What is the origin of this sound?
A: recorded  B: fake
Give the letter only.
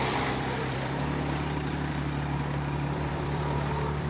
B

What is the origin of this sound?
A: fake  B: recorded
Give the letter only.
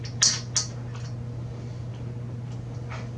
B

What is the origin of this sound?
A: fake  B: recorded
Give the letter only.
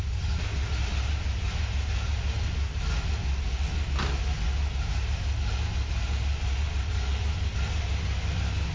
B